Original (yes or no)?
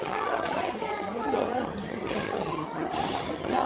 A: no